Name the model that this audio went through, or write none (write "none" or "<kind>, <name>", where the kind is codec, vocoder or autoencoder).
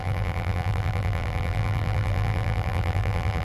vocoder, BigVGAN v2